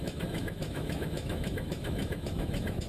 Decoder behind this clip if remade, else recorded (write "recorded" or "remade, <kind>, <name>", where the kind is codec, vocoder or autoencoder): remade, autoencoder, DAC-VAE